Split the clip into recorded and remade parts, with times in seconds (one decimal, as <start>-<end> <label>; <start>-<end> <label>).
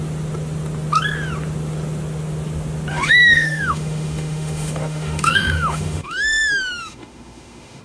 0.0-2.9 recorded; 2.9-7.8 remade